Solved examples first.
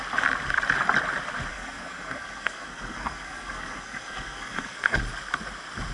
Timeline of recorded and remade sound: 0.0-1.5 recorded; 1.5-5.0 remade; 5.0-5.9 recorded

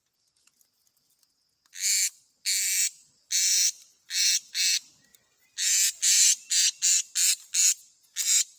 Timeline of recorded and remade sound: 0.0-8.6 recorded

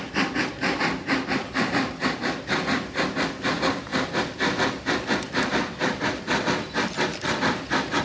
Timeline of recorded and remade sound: 0.0-8.0 recorded

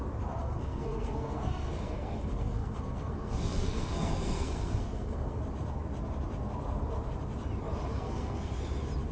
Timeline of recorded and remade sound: 0.0-0.4 recorded; 0.4-5.4 remade; 5.4-7.9 recorded; 7.9-8.6 remade; 8.6-9.1 recorded

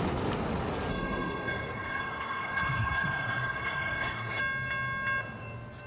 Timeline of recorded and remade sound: 0.0-0.9 recorded; 0.9-4.4 remade; 4.4-5.9 recorded

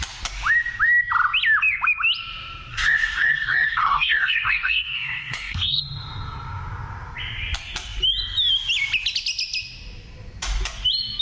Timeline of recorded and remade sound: 0.0-2.7 recorded; 2.7-5.8 remade; 5.8-11.2 recorded

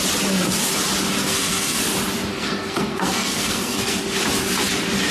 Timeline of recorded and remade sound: 0.0-1.2 recorded; 1.2-1.8 remade; 1.8-2.3 recorded; 2.3-4.0 remade; 4.0-5.1 recorded

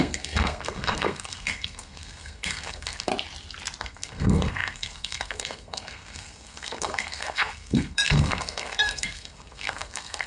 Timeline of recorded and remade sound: 0.0-3.1 remade; 3.1-3.8 recorded; 3.8-10.3 remade